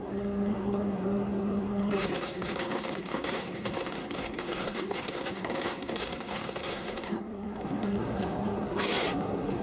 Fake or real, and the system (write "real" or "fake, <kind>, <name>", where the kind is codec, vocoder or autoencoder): fake, codec, SNAC